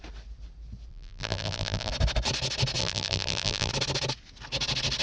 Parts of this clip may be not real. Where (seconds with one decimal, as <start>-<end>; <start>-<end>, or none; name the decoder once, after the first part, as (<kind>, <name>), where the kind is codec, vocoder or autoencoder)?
0.9-1.9 (vocoder, BigVGAN v2); 2.8-3.7